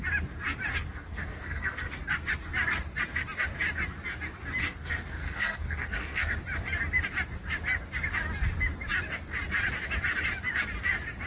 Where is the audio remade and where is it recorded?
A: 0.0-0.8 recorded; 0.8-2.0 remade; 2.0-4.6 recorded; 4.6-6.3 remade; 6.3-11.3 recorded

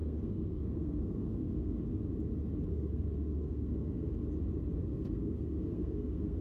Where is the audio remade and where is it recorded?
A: 0.0-1.8 remade; 1.8-2.7 recorded; 2.7-4.1 remade; 4.1-4.8 recorded; 4.8-6.4 remade

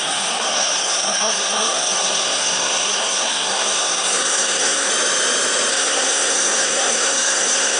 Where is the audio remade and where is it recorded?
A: 0.0-4.9 remade; 4.9-5.7 recorded; 5.7-7.8 remade

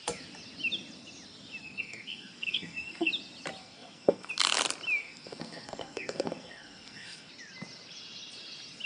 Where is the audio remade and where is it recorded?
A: 0.0-1.6 recorded; 1.6-3.1 remade; 3.1-3.6 recorded; 3.6-4.3 remade; 4.3-5.0 recorded; 5.0-7.3 remade; 7.3-8.9 recorded